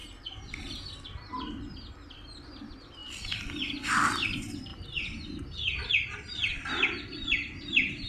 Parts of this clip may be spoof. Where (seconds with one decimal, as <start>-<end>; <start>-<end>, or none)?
2.6-4.7; 5.9-8.1